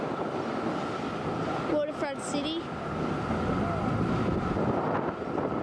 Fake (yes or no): no